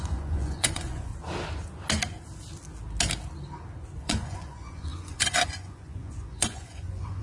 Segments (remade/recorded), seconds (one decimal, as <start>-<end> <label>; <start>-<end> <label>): 0.0-1.1 remade; 1.1-4.0 recorded; 4.0-7.2 remade